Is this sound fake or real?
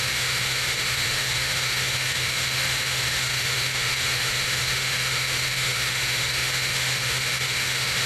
fake